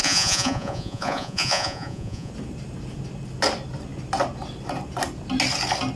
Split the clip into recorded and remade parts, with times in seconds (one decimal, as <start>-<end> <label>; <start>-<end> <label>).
0.0-2.3 remade; 2.3-6.0 recorded